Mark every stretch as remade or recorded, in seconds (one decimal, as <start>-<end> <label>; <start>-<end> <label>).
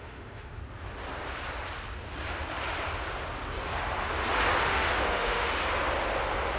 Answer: 0.0-0.6 remade; 0.6-4.6 recorded; 4.6-5.6 remade; 5.6-6.6 recorded